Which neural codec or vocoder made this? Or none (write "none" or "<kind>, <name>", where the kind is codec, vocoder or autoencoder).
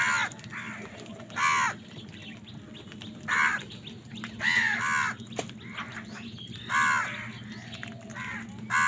none